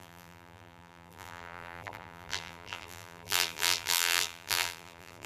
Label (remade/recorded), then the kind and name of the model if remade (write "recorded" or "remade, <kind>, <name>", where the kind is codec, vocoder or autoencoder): remade, vocoder, BigVGAN v2